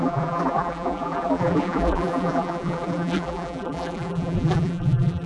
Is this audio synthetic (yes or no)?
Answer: yes